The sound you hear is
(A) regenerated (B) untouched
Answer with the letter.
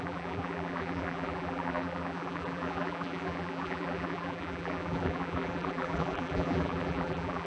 A